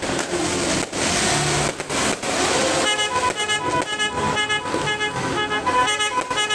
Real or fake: real